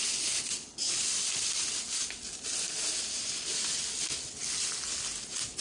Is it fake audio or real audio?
real